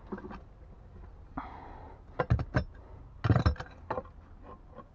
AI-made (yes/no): no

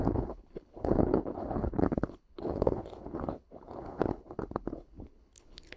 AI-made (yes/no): yes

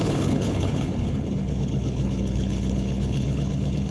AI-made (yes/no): yes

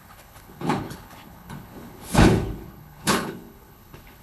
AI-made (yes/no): yes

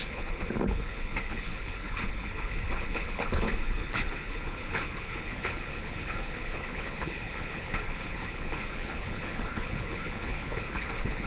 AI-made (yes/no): yes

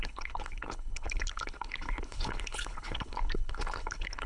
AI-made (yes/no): yes